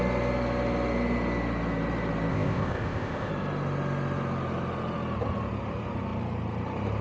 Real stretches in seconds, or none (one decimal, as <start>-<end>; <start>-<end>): 0.0-2.3; 3.3-7.0